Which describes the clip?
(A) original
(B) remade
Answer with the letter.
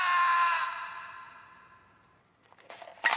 A